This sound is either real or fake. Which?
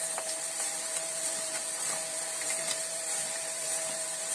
fake